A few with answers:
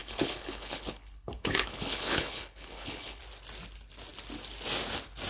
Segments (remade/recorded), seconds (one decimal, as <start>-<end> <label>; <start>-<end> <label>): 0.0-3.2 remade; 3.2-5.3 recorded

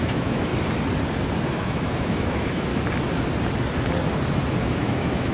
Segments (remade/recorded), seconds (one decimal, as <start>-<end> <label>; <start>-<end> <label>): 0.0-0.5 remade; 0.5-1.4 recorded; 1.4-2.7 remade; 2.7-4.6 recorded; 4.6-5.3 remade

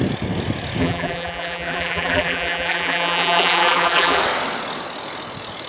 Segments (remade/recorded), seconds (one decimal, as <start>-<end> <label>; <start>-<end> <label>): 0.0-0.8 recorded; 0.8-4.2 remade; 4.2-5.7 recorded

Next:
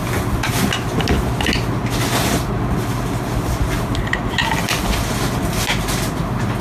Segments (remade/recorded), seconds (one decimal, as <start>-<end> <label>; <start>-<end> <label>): 0.0-6.6 recorded